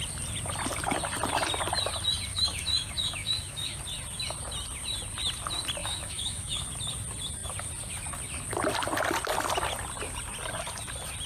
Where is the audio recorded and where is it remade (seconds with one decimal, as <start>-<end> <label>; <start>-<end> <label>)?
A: 0.0-2.3 recorded; 2.3-3.8 remade; 3.8-5.8 recorded; 5.8-6.6 remade; 6.6-11.3 recorded